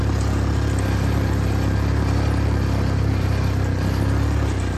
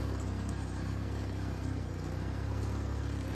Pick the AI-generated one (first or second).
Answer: second